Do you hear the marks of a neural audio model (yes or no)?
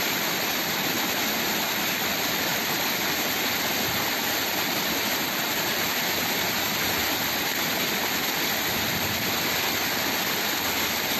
no